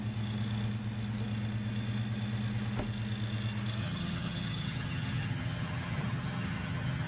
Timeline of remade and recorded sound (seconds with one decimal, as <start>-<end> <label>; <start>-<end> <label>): 0.0-3.8 recorded; 3.8-7.1 remade